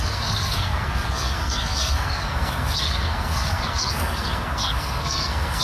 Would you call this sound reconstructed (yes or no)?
yes